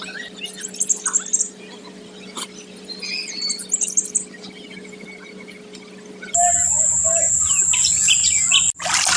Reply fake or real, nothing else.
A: real